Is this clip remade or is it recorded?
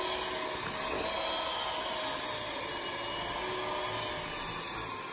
recorded